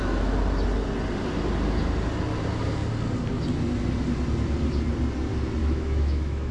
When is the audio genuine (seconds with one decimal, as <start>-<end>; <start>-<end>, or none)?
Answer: 0.0-5.6